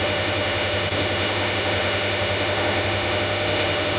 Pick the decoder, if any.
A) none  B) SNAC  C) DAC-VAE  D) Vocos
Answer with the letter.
C